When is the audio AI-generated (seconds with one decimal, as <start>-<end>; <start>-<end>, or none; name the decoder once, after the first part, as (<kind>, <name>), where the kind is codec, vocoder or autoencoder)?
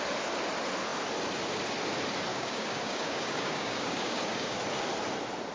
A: 2.3-4.6 (codec, DAC)